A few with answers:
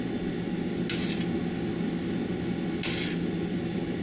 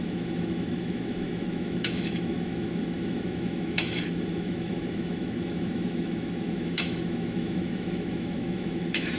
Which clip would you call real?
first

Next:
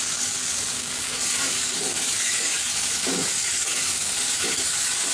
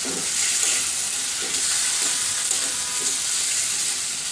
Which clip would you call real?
second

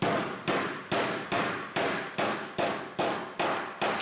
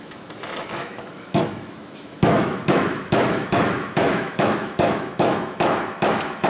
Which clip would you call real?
first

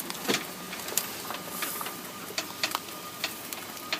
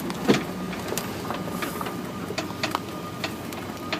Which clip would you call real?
second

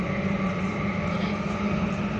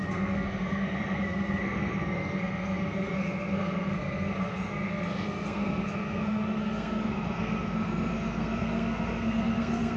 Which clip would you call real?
first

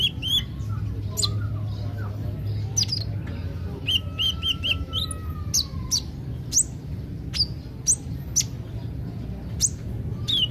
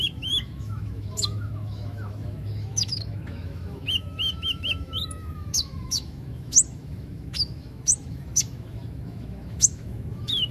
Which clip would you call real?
first